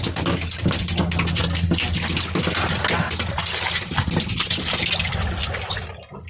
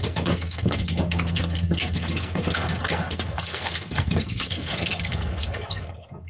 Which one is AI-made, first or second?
second